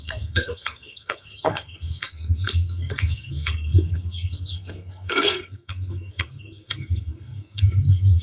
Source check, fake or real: fake